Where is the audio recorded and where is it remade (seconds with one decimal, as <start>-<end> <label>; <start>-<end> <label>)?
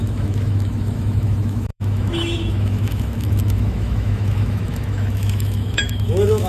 0.0-6.5 remade